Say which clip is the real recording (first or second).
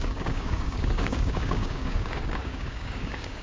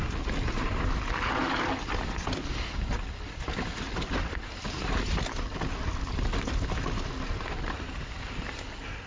second